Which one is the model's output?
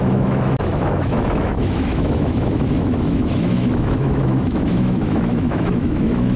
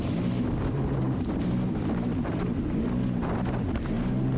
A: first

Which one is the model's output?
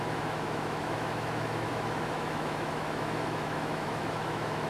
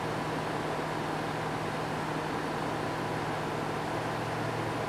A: first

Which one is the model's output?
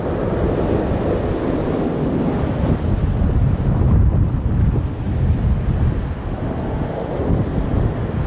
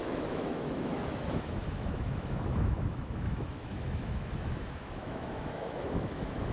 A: second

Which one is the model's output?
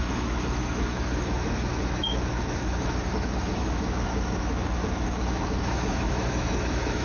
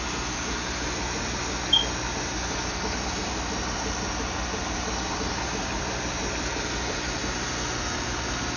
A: first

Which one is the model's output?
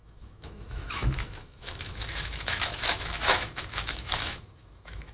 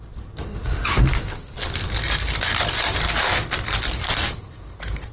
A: first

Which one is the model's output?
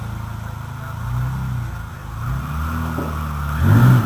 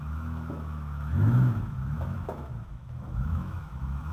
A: second